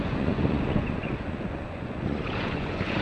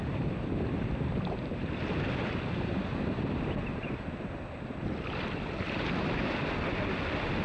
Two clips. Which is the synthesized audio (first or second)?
first